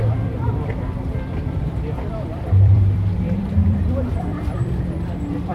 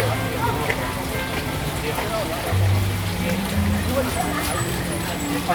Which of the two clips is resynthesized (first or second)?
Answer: first